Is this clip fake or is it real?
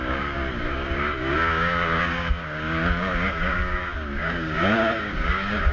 fake